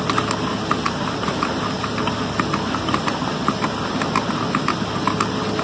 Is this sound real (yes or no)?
yes